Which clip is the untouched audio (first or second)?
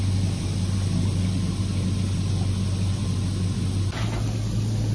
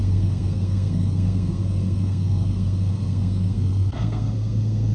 first